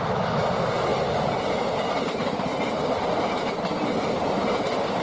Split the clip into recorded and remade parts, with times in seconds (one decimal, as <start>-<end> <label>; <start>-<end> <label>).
0.0-5.0 recorded